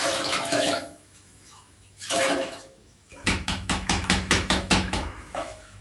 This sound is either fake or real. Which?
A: fake